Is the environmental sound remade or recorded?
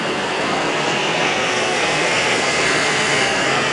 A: remade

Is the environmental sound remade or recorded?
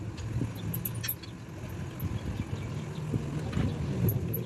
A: recorded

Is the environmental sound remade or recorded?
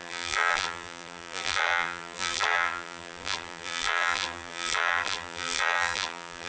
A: remade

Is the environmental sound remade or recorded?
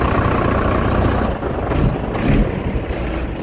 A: recorded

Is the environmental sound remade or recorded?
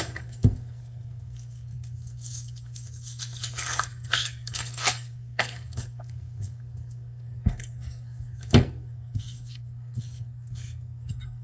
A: remade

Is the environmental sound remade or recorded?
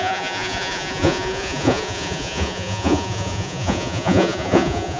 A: remade